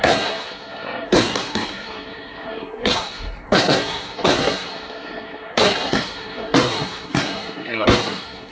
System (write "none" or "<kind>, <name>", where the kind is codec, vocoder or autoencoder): codec, SNAC